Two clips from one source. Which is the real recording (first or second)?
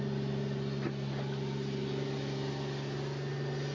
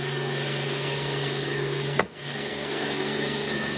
first